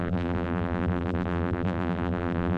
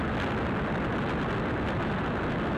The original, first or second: second